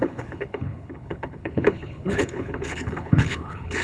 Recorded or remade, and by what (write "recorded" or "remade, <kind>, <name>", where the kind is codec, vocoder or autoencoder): remade, codec, HILCodec